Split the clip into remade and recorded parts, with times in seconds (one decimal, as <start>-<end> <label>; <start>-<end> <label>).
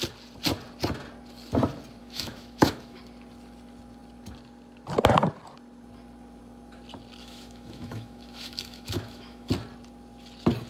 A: 0.0-2.0 recorded; 2.0-3.0 remade; 3.0-7.2 recorded; 7.2-9.5 remade; 9.5-10.7 recorded